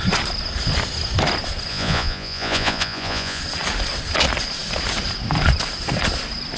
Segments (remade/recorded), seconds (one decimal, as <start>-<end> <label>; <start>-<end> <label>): 0.0-1.7 recorded; 1.7-3.4 remade; 3.4-6.6 recorded